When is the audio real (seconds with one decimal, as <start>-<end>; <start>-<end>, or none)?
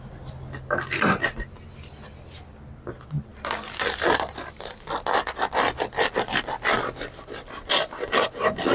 0.0-8.7